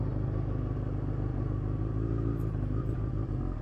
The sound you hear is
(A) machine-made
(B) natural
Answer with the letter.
B